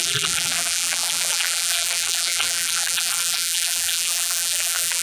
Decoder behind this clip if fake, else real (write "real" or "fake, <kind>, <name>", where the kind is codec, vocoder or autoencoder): fake, vocoder, BigVGAN v2